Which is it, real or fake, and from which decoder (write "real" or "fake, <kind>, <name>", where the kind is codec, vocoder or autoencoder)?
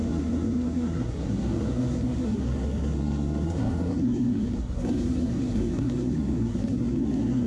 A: fake, codec, SNAC